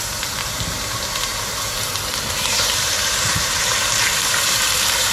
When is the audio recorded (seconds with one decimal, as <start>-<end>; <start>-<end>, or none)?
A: none

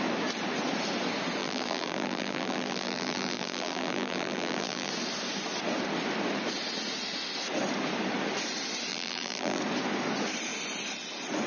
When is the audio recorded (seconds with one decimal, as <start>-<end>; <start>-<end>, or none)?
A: 0.0-1.4; 4.9-8.9; 9.6-11.5

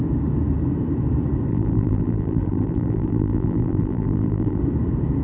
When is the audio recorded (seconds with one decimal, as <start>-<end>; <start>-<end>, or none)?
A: 0.0-1.5; 4.6-5.2

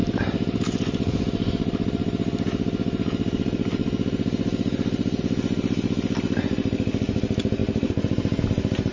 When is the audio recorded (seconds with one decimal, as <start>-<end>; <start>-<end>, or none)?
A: 5.2-7.6; 8.4-8.9

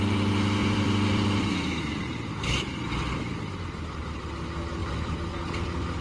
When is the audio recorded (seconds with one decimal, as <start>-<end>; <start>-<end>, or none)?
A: 0.0-0.6; 4.2-4.8; 5.3-6.0